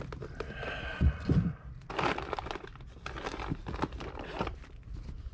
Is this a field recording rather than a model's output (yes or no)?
yes